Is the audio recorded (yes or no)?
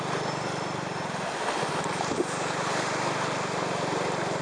yes